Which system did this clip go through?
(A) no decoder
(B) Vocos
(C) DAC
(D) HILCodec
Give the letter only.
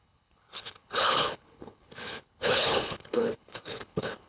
D